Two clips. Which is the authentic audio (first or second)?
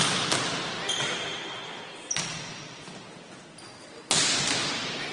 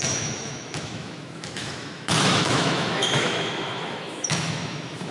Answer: first